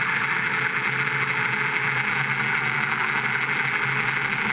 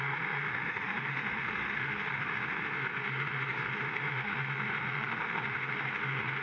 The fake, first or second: second